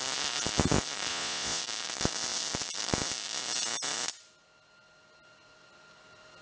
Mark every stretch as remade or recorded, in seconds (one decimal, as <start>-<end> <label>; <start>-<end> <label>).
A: 0.0-1.1 recorded; 1.1-1.6 remade; 1.6-6.4 recorded